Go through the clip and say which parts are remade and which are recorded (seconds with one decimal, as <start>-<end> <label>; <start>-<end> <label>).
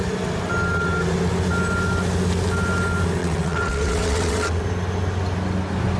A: 0.0-3.2 recorded; 3.2-4.6 remade; 4.6-6.0 recorded